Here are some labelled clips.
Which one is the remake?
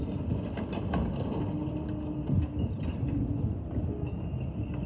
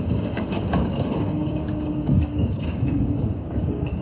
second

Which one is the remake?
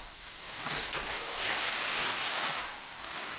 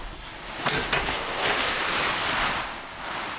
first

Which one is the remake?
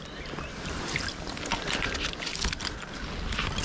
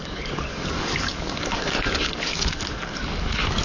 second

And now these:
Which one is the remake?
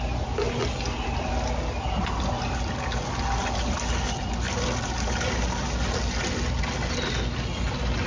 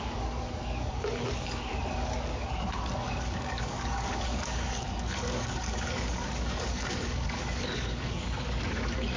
second